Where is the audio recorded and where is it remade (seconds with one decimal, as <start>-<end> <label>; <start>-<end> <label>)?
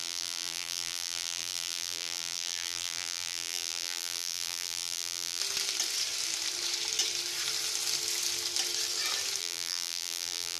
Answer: 0.0-5.4 remade; 5.4-9.4 recorded; 9.4-10.6 remade